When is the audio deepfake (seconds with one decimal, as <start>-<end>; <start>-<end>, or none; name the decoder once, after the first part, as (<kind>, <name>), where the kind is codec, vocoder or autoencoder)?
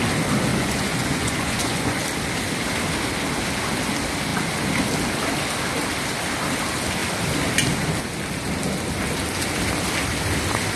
0.5-2.0 (vocoder, Vocos)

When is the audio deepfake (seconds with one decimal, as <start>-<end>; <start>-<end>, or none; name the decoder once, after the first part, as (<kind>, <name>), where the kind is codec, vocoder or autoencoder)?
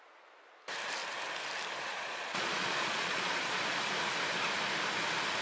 1.9-3.6 (vocoder, Vocos)